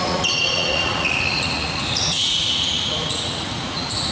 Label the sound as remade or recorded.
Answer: remade